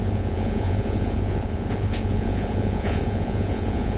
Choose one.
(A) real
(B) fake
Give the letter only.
B